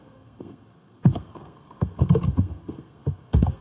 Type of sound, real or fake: fake